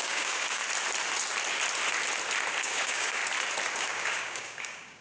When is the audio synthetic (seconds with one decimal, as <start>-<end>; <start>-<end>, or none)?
0.0-0.6; 2.6-3.2; 3.8-5.0